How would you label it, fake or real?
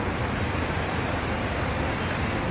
real